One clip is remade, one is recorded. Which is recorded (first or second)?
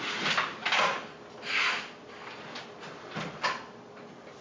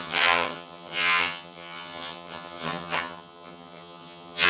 first